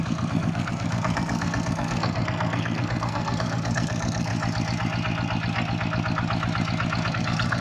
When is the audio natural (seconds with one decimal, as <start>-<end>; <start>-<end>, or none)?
4.3-7.1

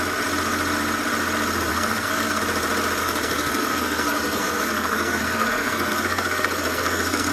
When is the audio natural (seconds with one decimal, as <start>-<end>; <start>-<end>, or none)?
0.0-1.7; 2.4-3.0